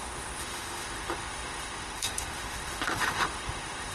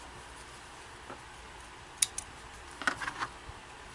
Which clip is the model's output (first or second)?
first